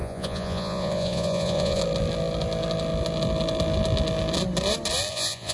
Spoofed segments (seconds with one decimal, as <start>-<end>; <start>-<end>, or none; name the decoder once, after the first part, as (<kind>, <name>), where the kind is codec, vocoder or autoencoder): 0.0-1.8 (vocoder, Vocos); 5.1-5.5

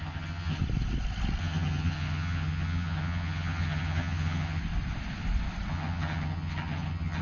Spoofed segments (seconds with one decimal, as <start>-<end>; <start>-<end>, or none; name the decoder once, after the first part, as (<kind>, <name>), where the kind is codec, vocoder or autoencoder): 0.0-0.6 (vocoder, HiFi-GAN); 1.4-4.6; 5.7-7.2

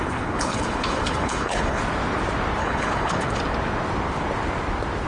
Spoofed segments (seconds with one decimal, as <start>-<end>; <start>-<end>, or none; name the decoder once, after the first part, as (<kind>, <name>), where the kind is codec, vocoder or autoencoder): 0.0-1.8 (codec, HILCodec); 2.6-3.4

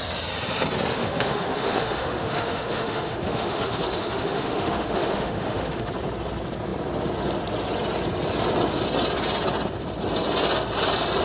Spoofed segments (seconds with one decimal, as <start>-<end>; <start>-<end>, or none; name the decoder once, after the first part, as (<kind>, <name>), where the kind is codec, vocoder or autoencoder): 0.9-5.9 (autoencoder, DAC-VAE)

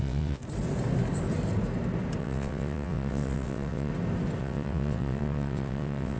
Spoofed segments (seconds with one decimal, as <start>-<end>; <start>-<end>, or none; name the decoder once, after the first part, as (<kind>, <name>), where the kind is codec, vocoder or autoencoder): 0.0-0.4 (vocoder, WaveNeXt); 2.2-3.9; 4.4-6.2